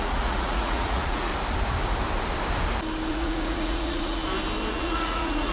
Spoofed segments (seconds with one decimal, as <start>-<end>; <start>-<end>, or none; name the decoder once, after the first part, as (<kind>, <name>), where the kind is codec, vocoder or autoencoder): 0.0-1.3 (vocoder, Vocos); 3.1-4.2; 4.7-5.5